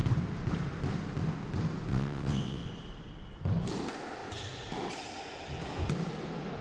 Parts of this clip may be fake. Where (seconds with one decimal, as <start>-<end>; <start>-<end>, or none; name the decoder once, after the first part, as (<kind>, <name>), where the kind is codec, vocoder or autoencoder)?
1.9-2.7 (vocoder, WaveNeXt)